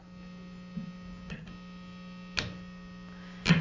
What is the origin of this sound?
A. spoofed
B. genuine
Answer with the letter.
B